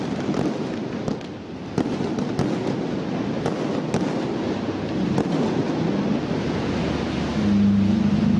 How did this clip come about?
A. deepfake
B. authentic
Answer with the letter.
B